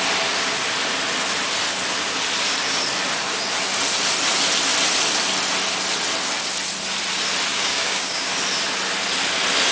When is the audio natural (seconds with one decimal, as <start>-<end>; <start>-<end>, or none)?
0.0-7.5; 8.3-9.7